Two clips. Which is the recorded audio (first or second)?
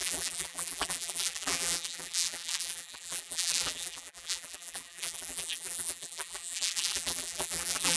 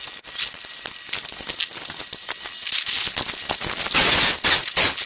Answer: second